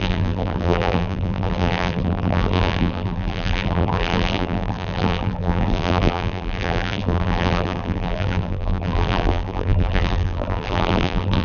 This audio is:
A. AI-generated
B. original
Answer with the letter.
A